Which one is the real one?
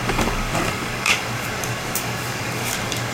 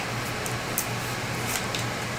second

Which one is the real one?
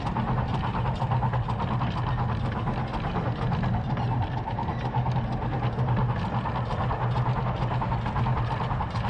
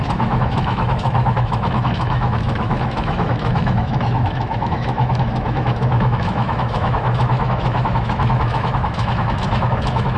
first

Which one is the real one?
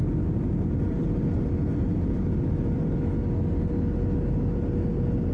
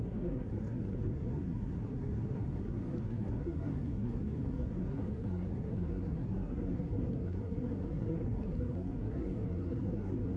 first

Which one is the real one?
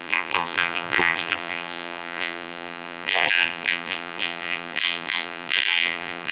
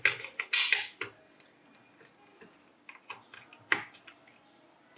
second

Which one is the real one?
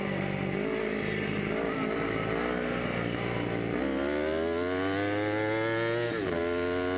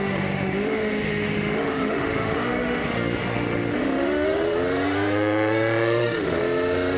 first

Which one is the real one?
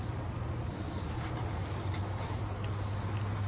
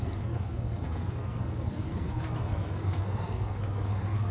first